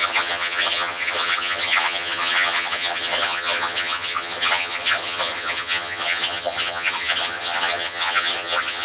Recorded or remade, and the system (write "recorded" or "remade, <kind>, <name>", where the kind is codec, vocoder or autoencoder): remade, vocoder, HiFi-GAN